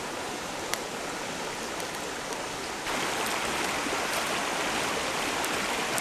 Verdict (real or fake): real